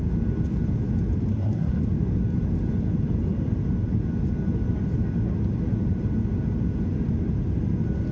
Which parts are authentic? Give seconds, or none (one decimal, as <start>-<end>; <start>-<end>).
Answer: 0.0-1.3; 1.8-8.1